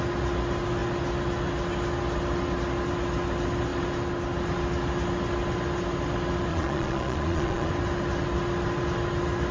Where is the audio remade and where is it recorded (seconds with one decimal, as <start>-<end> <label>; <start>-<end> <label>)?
0.0-6.5 recorded; 6.5-7.7 remade; 7.7-9.5 recorded